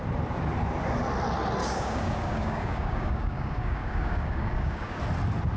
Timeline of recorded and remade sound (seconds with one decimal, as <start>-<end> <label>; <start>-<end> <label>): 0.0-1.6 recorded; 1.6-5.0 remade; 5.0-5.6 recorded